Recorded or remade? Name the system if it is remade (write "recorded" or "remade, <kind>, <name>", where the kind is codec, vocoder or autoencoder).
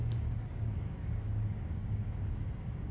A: remade, codec, DAC